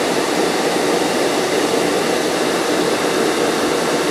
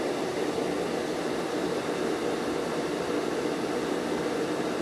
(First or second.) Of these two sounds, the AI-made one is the first